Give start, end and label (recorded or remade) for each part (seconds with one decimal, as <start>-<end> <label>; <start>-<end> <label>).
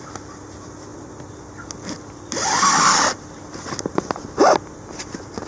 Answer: 0.0-5.5 recorded